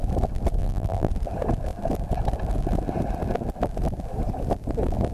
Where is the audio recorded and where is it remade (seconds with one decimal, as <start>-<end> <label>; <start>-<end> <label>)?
0.0-0.6 recorded; 0.6-1.1 remade; 1.1-5.1 recorded